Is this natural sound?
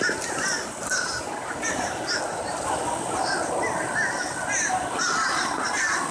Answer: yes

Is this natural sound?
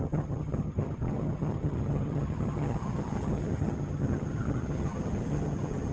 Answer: no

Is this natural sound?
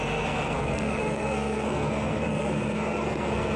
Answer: no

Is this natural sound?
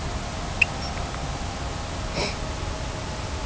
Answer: yes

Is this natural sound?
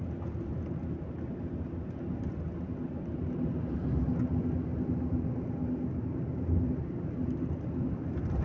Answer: yes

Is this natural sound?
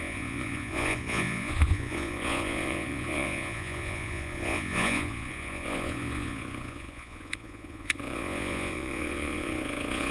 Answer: no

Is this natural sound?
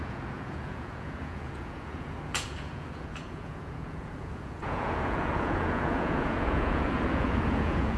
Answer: no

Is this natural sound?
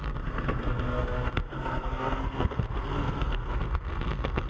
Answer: no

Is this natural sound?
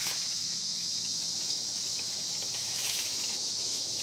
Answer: no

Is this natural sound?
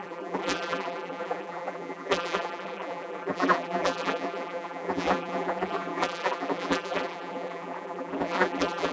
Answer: no